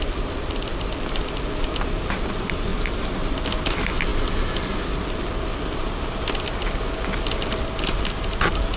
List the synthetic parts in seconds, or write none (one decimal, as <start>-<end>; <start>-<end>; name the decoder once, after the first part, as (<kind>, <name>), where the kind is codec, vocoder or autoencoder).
none